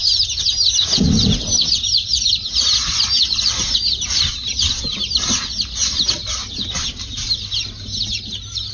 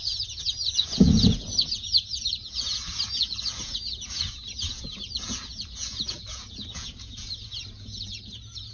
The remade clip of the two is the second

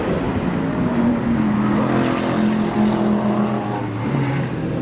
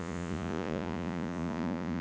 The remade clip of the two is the second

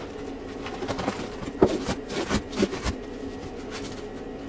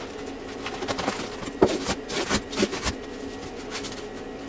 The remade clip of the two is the first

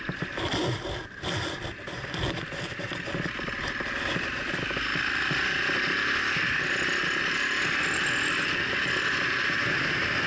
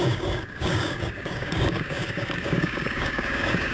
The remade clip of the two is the second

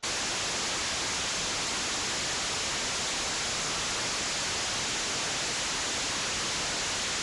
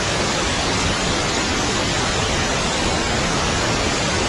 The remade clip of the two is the second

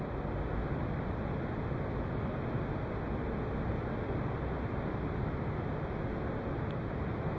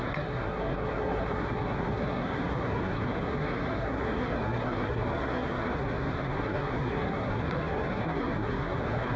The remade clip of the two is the second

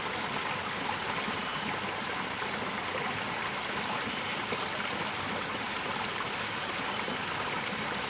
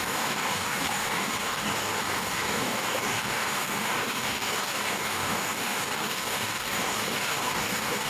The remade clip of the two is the second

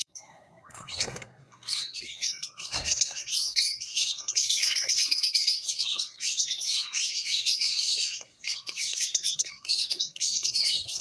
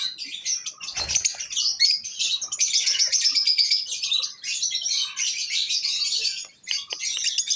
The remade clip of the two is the first